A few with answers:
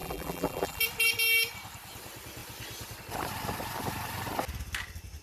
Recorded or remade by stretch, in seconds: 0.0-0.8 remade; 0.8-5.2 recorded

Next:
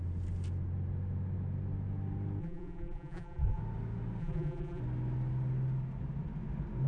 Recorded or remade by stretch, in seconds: 0.0-2.4 recorded; 2.4-3.6 remade; 3.6-4.2 recorded; 4.2-4.8 remade; 4.8-6.9 recorded

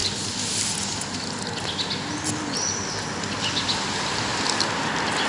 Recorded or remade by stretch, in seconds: 0.0-5.3 recorded